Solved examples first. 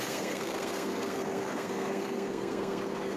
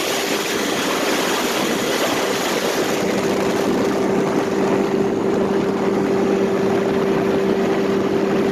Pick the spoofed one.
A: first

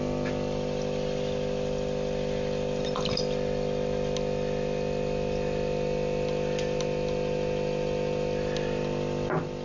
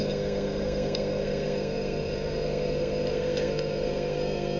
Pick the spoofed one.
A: second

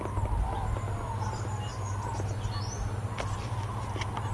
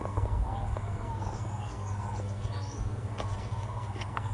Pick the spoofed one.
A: second